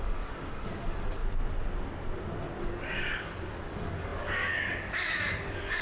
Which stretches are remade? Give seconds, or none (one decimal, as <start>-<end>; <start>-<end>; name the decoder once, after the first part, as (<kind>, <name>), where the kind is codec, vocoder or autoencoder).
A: 0.0-1.2 (codec, DAC); 2.6-5.8